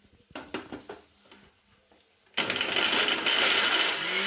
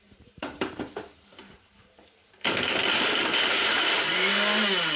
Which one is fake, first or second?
second